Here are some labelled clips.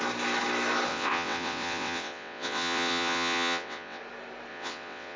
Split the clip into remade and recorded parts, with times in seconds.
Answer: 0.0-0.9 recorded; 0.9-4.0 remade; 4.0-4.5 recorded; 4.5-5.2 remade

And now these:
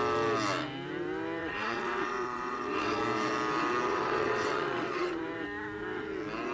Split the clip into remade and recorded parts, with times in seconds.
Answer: 0.0-1.4 recorded; 1.4-3.0 remade; 3.0-3.9 recorded; 3.9-5.2 remade; 5.2-6.5 recorded

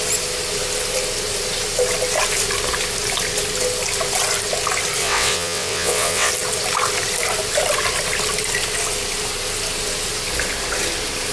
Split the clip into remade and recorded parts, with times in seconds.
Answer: 0.0-5.0 recorded; 5.0-6.3 remade; 6.3-11.3 recorded

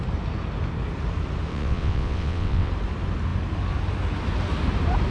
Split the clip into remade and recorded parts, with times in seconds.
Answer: 0.0-1.5 recorded; 1.5-2.7 remade; 2.7-5.1 recorded